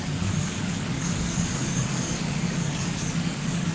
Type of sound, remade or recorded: remade